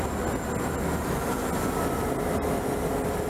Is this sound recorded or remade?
recorded